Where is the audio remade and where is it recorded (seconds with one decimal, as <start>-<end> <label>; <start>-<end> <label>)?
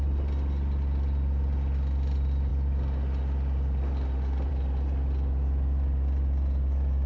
0.0-7.1 recorded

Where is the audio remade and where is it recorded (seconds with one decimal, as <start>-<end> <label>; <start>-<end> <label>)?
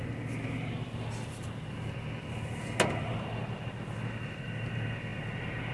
0.0-5.7 recorded